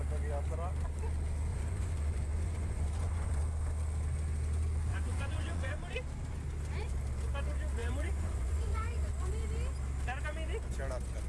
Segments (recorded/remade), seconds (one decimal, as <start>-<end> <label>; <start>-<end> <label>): 0.0-1.5 recorded; 1.5-3.4 remade; 3.4-4.9 recorded; 4.9-5.7 remade; 5.7-7.8 recorded; 7.8-9.1 remade; 9.1-11.3 recorded